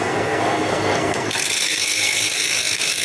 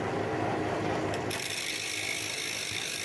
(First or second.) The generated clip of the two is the first